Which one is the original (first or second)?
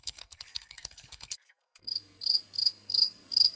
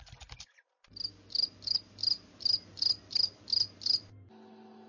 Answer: second